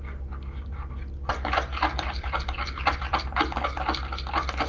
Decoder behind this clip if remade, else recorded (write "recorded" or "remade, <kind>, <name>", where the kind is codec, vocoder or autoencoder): recorded